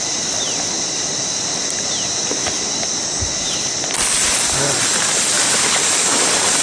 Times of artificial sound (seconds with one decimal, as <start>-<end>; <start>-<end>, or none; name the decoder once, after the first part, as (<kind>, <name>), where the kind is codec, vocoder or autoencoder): none